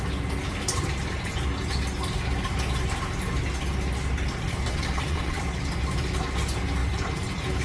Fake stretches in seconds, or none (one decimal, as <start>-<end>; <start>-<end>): 4.7-5.4